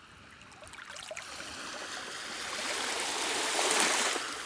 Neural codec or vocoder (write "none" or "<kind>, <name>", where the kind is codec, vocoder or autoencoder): none